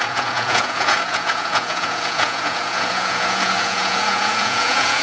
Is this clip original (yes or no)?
no